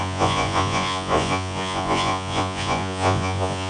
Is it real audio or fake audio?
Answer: fake